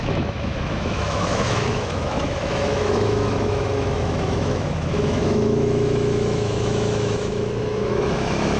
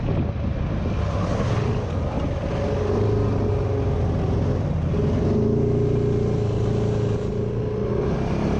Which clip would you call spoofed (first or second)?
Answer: first